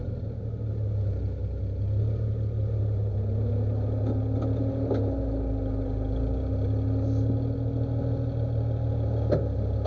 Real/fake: real